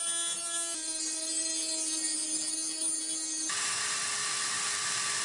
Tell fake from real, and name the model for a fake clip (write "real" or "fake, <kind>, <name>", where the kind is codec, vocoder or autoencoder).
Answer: real